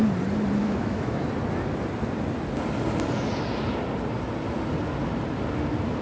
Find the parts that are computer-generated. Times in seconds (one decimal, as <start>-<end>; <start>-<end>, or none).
0.6-1.2